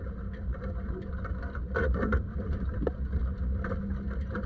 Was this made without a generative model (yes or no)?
yes